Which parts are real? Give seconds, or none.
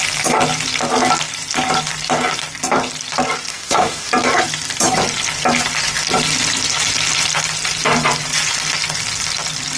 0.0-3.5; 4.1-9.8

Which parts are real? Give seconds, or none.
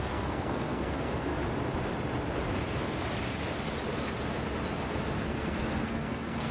1.3-5.2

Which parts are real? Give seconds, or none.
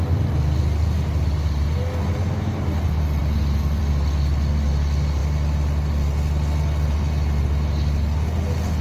0.0-8.8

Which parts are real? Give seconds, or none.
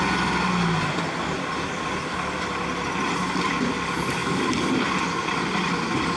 0.0-6.2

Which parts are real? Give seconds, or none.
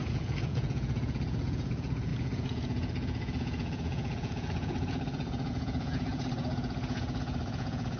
none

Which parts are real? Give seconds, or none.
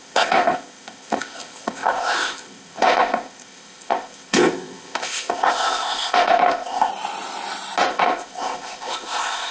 6.9-7.9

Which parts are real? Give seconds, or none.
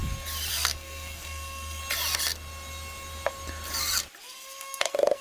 0.0-0.5; 1.8-4.2